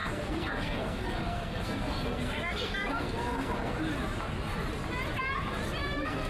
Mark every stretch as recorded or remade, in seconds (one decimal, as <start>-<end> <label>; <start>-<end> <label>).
0.0-3.8 remade; 3.8-5.8 recorded; 5.8-6.3 remade